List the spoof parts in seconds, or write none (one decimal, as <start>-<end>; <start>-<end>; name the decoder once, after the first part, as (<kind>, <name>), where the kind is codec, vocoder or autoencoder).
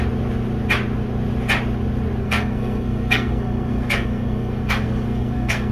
2.2-5.7 (codec, SNAC)